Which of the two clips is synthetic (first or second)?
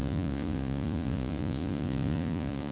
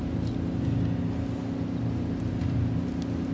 first